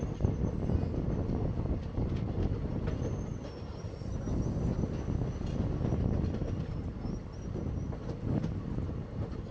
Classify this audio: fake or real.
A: real